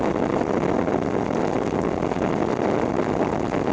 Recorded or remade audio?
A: recorded